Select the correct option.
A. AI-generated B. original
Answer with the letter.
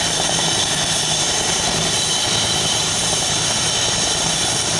A